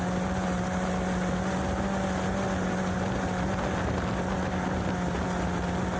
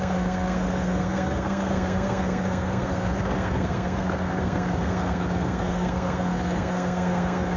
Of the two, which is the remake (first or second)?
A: second